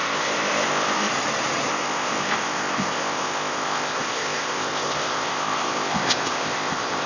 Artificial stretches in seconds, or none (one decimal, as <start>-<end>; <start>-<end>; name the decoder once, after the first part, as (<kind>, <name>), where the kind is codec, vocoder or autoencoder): 0.0-1.1 (codec, ZipCodec); 1.7-7.1